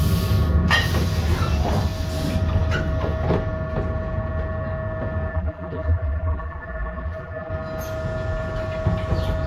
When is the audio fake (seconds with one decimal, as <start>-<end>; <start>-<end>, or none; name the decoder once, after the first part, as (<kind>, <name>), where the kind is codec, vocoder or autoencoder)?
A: 5.3-7.5 (vocoder, BigVGAN v2)